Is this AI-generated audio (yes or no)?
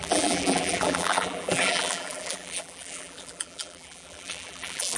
yes